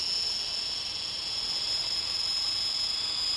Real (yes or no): yes